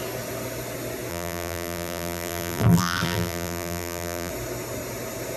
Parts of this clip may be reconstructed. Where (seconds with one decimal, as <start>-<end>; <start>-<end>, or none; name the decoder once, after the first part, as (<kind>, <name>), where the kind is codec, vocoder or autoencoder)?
1.1-4.3 (vocoder, BigVGAN v2)